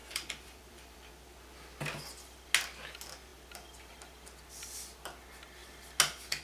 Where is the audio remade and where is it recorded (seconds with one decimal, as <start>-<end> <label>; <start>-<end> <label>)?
0.0-1.1 remade; 1.1-6.4 recorded